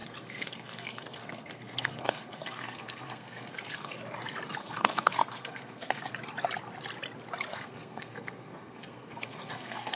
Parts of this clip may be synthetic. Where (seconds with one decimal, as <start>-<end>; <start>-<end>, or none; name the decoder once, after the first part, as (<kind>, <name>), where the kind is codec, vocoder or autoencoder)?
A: 0.0-4.0 (codec, SNAC); 4.6-6.1; 7.5-10.0